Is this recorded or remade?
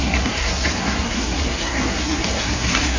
remade